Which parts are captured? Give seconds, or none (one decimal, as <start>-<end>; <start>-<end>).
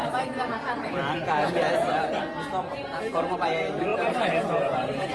0.0-3.1